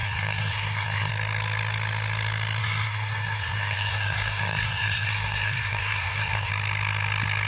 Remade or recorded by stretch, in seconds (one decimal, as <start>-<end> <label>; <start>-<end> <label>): 0.0-1.1 remade; 1.1-2.6 recorded; 2.6-6.5 remade; 6.5-7.5 recorded

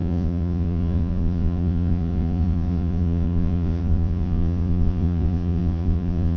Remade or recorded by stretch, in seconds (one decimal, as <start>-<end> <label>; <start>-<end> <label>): 0.0-6.4 remade